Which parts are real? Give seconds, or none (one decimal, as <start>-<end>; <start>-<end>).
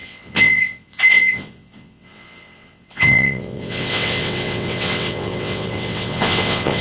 none